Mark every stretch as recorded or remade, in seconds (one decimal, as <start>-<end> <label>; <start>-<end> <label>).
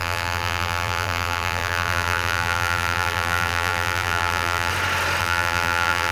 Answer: 0.0-4.7 remade; 4.7-5.2 recorded; 5.2-6.1 remade